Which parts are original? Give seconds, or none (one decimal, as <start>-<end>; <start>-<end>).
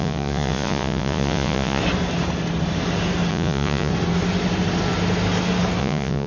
1.8-3.3; 3.9-5.8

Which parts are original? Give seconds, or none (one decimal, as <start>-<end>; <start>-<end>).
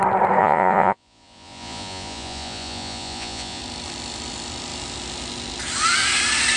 0.0-0.4; 3.6-6.6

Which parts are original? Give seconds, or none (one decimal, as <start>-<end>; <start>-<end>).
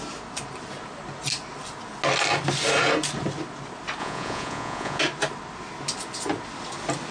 0.0-4.0; 5.0-7.1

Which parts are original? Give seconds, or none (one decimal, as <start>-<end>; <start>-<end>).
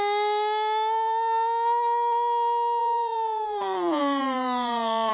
0.0-2.8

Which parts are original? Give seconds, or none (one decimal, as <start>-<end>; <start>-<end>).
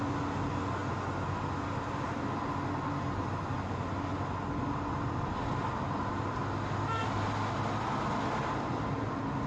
0.0-9.5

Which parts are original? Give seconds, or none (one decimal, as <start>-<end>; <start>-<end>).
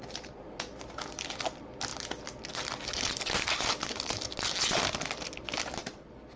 0.0-6.4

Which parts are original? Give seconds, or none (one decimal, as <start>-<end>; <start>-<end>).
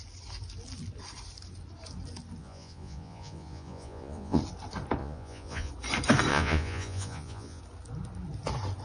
0.0-2.4; 4.4-5.0; 5.7-6.3; 7.6-8.8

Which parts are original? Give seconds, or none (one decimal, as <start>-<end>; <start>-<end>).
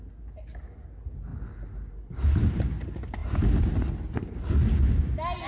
0.0-5.5